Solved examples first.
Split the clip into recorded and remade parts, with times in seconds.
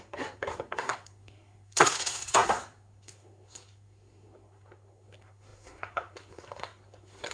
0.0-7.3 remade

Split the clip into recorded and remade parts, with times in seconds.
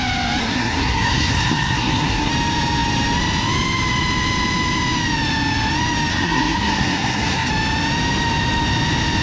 0.0-0.4 recorded; 0.4-2.3 remade; 2.3-6.1 recorded; 6.1-7.5 remade; 7.5-9.2 recorded